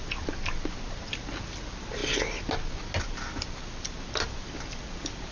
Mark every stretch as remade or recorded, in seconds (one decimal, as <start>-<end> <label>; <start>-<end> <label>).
0.0-5.3 recorded